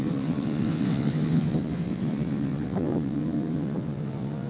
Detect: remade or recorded remade